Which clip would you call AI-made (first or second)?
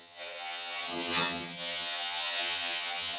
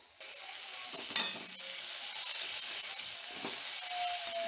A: first